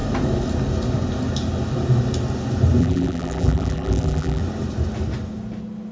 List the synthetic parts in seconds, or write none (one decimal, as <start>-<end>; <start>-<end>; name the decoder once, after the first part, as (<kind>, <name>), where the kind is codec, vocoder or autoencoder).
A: 2.8-4.4 (vocoder, BigVGAN v2)